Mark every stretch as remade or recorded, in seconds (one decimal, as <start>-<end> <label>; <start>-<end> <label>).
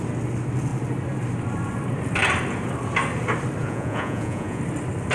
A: 0.0-3.6 recorded; 3.6-4.6 remade; 4.6-5.1 recorded